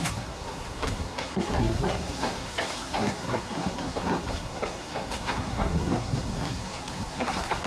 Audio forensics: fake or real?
fake